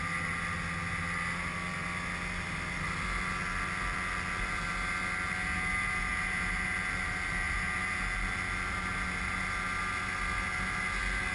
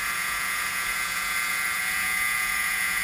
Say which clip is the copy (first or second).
second